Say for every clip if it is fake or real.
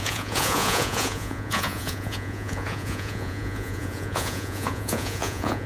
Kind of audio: fake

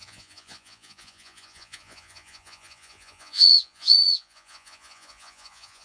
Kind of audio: fake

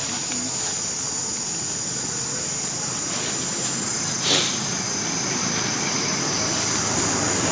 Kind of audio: real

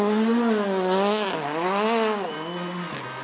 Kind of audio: real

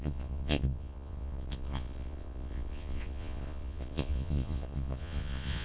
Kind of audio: fake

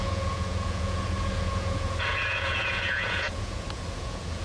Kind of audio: fake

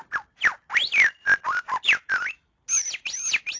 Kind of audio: real